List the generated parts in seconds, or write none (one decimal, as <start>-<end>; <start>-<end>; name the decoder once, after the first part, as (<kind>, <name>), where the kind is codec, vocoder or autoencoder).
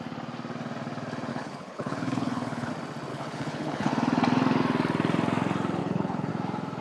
1.3-2.7 (codec, HILCodec); 3.1-3.9; 5.8-6.3